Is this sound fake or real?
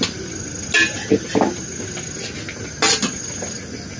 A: real